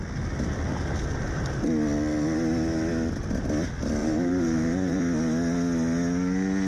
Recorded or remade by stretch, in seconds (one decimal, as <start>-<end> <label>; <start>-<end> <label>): 0.0-4.0 recorded; 4.0-5.0 remade; 5.0-6.7 recorded